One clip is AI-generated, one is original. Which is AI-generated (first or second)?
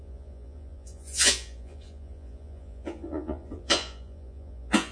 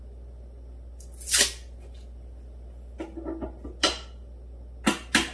first